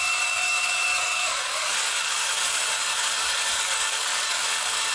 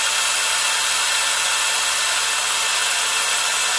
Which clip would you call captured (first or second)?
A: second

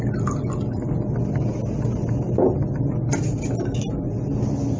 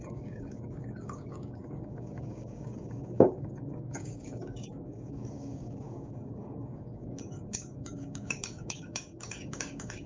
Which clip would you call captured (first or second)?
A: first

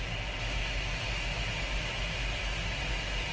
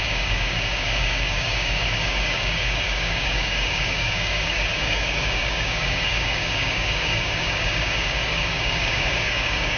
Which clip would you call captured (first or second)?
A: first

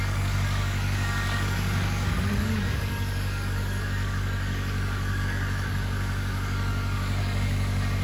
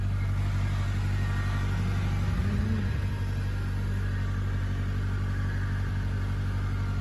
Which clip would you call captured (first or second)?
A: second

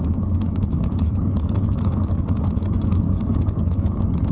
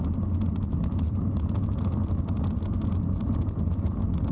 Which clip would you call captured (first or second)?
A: second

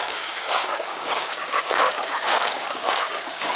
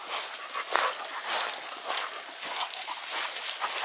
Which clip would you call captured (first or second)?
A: second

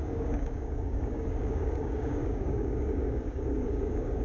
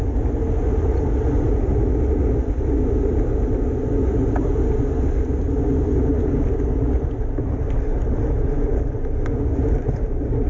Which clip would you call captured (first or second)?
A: second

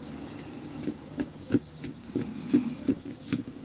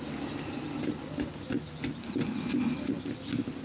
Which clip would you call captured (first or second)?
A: second